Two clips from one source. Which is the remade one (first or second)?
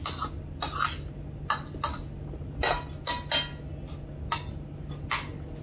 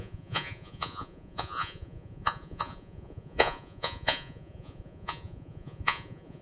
second